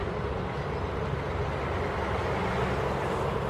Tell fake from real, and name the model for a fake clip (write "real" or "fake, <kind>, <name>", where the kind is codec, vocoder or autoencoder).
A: real